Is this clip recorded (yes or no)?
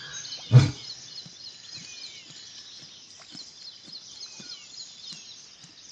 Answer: yes